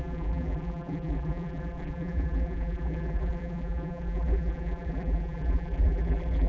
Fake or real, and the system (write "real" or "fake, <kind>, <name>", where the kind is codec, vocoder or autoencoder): fake, vocoder, BigVGAN v2